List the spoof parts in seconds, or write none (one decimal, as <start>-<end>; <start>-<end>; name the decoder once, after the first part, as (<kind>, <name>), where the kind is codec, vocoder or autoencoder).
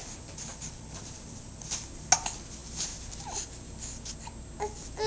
0.5-1.7 (vocoder, BigVGAN v2)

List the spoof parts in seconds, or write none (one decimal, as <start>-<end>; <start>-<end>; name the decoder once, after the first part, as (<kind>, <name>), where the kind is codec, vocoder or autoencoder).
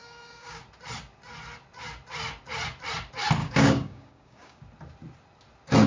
0.0-0.6 (codec, DAC); 3.4-4.6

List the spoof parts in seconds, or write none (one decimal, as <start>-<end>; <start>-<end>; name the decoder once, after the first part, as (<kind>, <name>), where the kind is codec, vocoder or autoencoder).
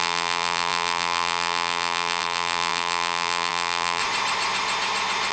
0.0-4.0 (vocoder, BigVGAN v2)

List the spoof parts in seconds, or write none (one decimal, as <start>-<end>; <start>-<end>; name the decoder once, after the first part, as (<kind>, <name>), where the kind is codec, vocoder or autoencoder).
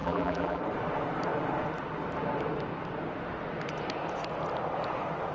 0.0-0.6 (vocoder, BigVGAN v2)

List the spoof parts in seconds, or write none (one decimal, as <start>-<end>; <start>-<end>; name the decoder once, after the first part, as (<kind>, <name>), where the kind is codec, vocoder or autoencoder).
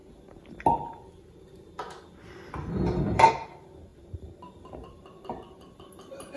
3.9-4.7 (vocoder, BigVGAN v2)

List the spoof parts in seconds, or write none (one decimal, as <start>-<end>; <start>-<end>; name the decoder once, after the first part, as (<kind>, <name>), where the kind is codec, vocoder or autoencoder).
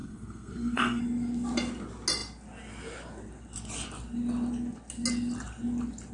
0.0-1.0 (codec, SNAC)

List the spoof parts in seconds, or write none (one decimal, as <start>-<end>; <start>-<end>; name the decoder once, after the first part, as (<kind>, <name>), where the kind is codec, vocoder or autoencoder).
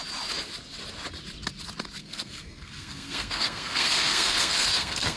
2.0-5.2 (codec, SNAC)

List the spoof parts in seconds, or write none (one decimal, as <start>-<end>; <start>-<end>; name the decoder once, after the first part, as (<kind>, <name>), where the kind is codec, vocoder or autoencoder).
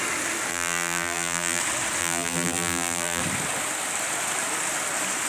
0.5-1.6 (vocoder, BigVGAN v2); 2.0-3.2